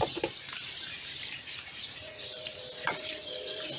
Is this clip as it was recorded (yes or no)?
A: no